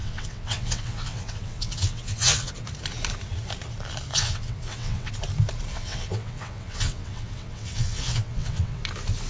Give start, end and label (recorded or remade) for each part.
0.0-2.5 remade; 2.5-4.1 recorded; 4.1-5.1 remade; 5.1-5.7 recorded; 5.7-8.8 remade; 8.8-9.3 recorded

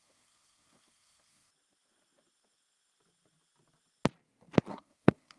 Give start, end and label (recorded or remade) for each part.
0.0-1.5 remade; 1.5-4.7 recorded; 4.7-5.4 remade

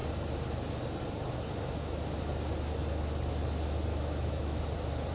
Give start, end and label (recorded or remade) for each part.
0.0-3.9 recorded; 3.9-4.6 remade; 4.6-5.1 recorded